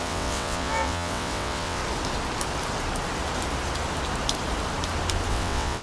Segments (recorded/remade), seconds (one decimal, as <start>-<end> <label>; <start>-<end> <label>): 0.0-1.8 remade; 1.8-5.3 recorded; 5.3-5.8 remade

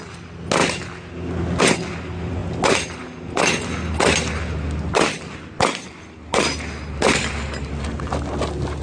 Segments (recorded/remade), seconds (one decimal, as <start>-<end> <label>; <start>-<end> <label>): 0.0-8.8 recorded

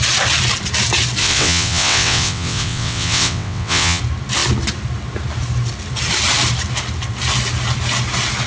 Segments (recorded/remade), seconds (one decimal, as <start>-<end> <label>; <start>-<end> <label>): 0.0-1.2 recorded; 1.2-4.0 remade; 4.0-8.5 recorded

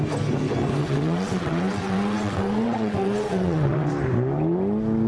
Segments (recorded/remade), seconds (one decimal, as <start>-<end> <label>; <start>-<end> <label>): 0.0-0.8 recorded; 0.8-3.9 remade; 3.9-5.1 recorded